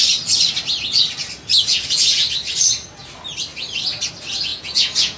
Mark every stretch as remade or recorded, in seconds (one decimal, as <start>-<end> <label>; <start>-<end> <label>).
0.0-1.5 recorded; 1.5-2.3 remade; 2.3-4.5 recorded; 4.5-5.2 remade